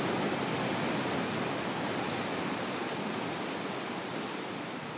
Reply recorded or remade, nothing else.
recorded